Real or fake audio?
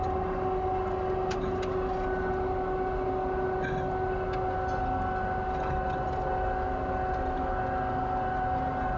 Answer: real